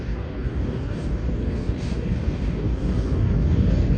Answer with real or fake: fake